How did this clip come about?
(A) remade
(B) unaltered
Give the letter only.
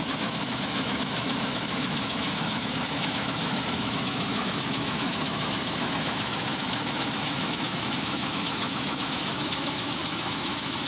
A